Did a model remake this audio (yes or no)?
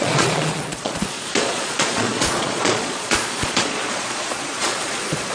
yes